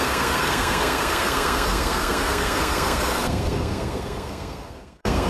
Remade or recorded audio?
remade